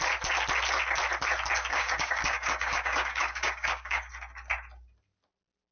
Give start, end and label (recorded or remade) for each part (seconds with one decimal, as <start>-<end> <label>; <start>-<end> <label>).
0.0-1.7 recorded; 1.7-4.1 remade; 4.1-5.7 recorded